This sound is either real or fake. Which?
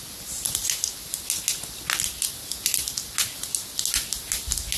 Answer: real